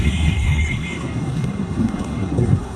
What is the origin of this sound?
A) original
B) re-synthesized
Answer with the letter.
B